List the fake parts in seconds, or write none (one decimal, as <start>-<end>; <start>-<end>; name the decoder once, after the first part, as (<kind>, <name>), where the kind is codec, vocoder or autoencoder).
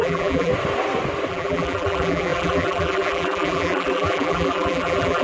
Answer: 0.0-0.5 (vocoder, BigVGAN v2); 1.3-5.2